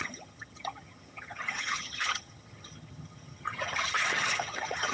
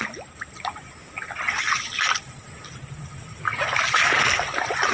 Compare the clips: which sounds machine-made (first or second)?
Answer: first